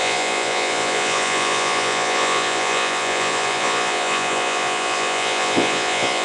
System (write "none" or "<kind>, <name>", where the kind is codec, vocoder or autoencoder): vocoder, Vocos